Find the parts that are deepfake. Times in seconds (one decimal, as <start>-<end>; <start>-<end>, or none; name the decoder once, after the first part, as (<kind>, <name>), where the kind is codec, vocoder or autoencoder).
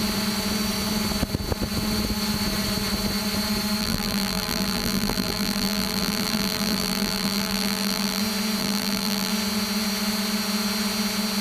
3.8-8.2 (vocoder, BigVGAN v2); 8.6-9.3